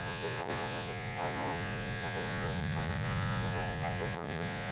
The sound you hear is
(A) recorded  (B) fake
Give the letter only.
B